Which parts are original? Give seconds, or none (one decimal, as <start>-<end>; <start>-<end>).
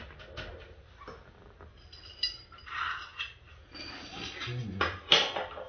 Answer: 0.0-1.4; 2.7-5.7